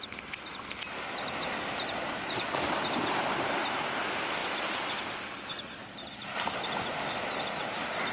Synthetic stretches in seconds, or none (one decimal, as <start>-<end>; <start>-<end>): none